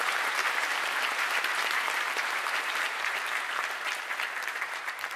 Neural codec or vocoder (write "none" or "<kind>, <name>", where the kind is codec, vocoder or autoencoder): vocoder, BigVGAN v2